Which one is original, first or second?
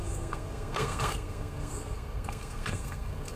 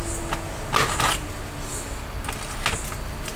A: second